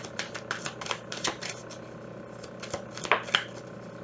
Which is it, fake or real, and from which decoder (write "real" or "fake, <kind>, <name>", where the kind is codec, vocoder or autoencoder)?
real